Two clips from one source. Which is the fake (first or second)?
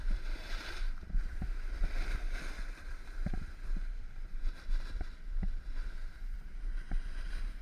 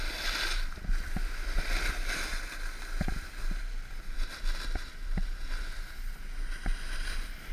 first